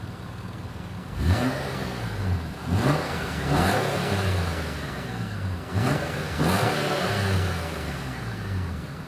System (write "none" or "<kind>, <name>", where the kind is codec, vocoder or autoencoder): codec, SNAC